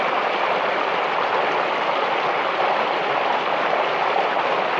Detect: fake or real real